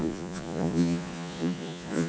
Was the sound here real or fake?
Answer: fake